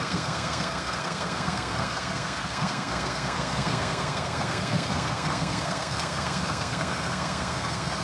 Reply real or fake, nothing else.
fake